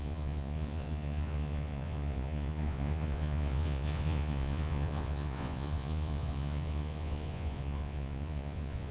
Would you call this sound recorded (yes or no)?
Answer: no